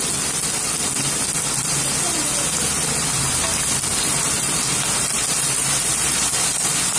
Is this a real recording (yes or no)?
yes